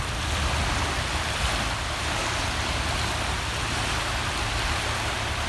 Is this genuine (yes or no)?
yes